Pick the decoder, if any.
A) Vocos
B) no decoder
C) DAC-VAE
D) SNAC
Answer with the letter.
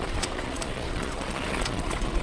A